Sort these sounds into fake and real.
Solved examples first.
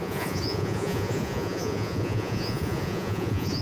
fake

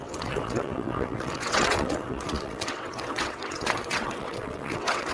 fake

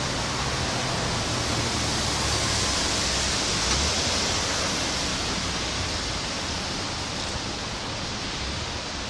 real